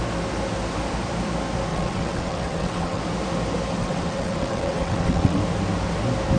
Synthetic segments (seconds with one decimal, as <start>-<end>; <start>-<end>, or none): 1.7-3.0; 3.8-5.4